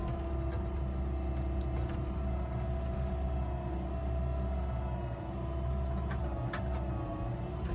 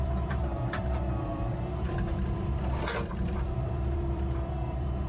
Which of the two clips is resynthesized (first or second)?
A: second